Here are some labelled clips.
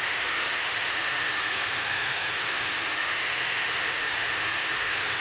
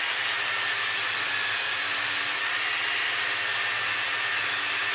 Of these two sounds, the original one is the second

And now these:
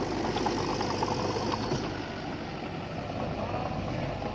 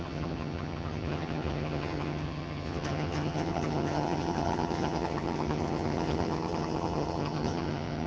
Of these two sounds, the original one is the first